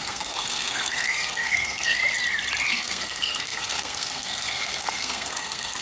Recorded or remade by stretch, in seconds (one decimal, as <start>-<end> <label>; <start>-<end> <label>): 0.0-2.0 remade; 2.0-2.7 recorded; 2.7-5.8 remade